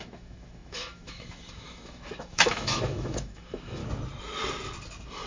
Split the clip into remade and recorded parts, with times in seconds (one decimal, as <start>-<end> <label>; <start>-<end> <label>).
0.0-3.8 remade; 3.8-5.3 recorded